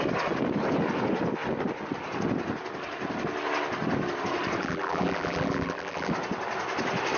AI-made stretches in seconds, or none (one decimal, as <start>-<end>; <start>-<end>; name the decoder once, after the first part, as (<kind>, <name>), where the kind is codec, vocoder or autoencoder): 4.6-6.1 (vocoder, BigVGAN v2)